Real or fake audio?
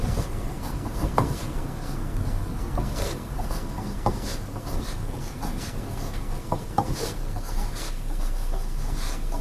fake